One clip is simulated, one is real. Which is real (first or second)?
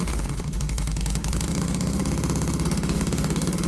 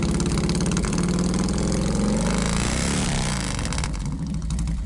second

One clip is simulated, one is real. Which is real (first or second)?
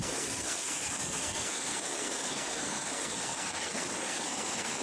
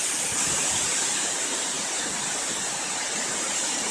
second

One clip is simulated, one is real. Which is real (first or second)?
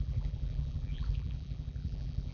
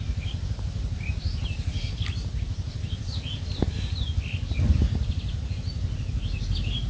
second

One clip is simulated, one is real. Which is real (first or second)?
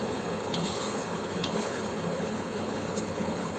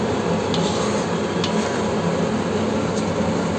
second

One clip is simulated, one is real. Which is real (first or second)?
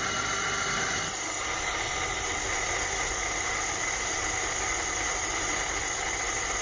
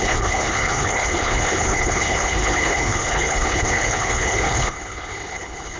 first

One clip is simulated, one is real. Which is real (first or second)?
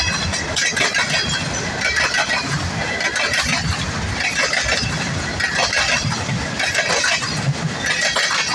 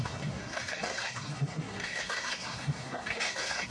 first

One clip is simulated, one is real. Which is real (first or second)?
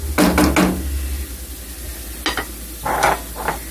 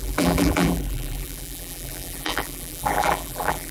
first